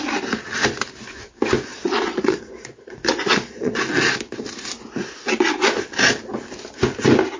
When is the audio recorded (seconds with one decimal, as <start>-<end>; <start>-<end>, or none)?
0.0-1.7; 3.8-7.4

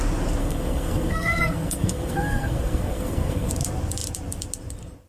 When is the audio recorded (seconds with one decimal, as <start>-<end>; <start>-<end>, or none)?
0.0-0.4; 3.5-5.1

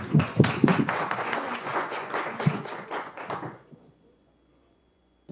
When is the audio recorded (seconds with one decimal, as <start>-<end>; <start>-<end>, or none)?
none

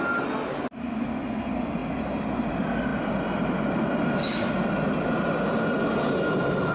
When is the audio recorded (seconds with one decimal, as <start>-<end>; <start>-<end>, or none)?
0.0-1.8; 2.5-2.9; 3.9-6.7

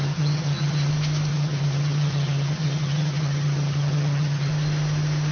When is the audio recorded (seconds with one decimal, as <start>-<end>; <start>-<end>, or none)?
0.9-1.3; 4.5-5.3

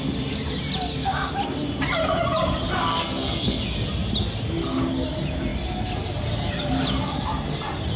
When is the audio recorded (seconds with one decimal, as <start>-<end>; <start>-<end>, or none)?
0.0-2.9; 3.6-8.0

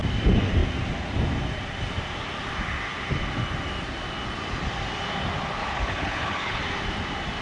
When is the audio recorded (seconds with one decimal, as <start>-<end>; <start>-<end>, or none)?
0.0-5.6; 6.6-7.4

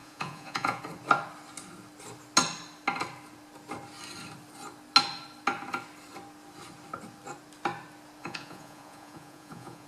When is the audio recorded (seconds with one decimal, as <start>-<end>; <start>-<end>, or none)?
0.8-8.2